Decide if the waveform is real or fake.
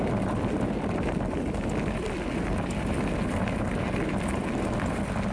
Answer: real